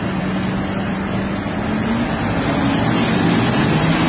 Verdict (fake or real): real